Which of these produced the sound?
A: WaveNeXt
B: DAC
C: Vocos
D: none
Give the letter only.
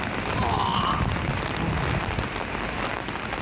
D